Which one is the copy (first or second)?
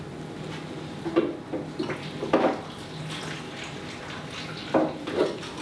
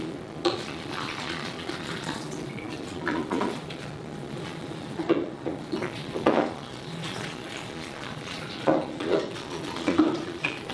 second